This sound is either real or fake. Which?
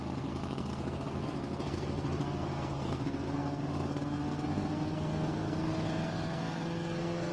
fake